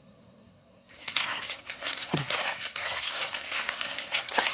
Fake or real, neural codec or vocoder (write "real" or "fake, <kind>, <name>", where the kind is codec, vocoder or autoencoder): fake, codec, SNAC